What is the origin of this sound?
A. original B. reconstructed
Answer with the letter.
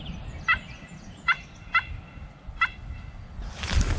A